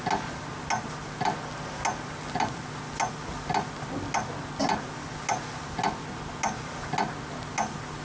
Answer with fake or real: real